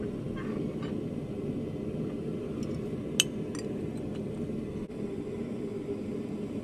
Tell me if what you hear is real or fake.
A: real